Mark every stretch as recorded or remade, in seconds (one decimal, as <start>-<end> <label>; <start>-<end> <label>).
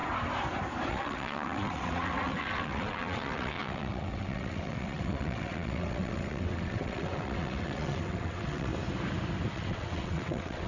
0.0-0.9 recorded; 0.9-8.7 remade; 8.7-9.5 recorded; 9.5-10.7 remade